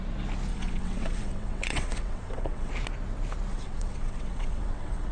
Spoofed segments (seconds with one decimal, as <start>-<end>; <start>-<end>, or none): 0.5-2.7; 3.5-5.1